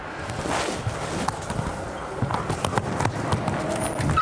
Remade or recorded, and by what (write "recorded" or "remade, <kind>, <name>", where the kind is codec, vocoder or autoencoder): recorded